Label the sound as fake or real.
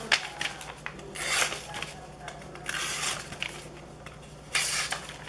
real